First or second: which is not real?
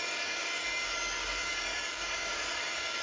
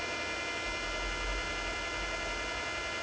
first